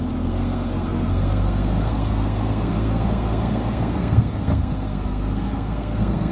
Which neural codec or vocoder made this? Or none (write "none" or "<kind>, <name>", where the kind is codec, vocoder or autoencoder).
codec, SNAC